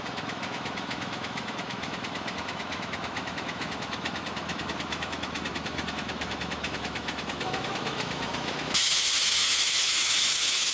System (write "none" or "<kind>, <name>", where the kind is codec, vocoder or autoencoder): autoencoder, DAC-VAE